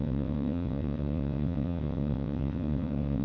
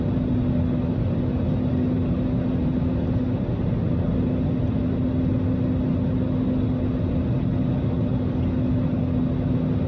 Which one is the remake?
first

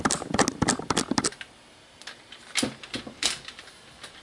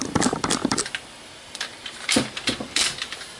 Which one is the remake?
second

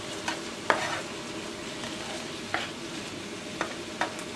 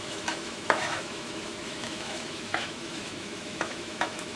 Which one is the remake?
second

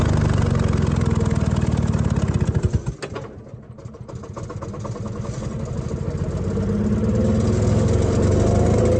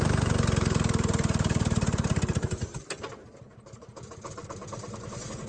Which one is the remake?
second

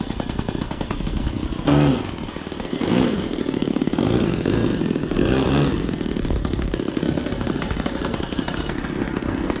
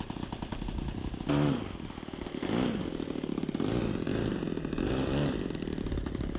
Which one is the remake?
first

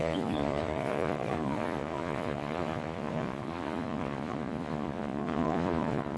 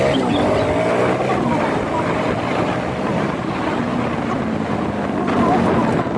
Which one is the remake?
first